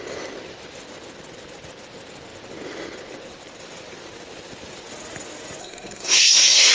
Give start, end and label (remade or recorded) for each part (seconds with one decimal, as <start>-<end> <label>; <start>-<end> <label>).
0.0-5.6 recorded; 5.6-6.7 remade